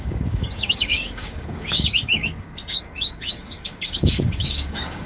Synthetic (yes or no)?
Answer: yes